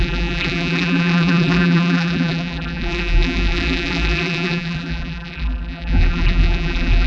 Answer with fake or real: fake